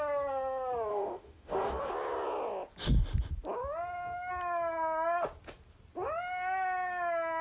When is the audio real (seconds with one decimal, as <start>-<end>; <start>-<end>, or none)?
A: 0.0-0.9; 1.9-7.4